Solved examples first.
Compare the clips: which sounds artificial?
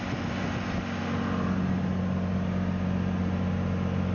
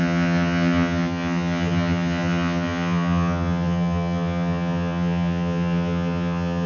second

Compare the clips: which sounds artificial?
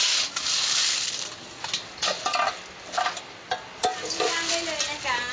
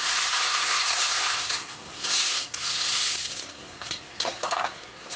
second